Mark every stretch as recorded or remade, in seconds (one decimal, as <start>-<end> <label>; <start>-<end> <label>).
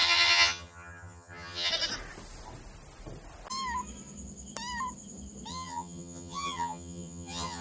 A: 0.0-1.7 remade; 1.7-5.5 recorded; 5.5-7.6 remade